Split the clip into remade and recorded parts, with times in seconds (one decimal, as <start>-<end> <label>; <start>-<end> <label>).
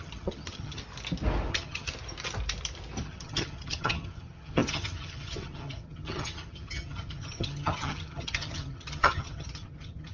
0.0-0.8 remade; 0.8-1.5 recorded; 1.5-1.9 remade; 1.9-3.0 recorded; 3.0-10.1 remade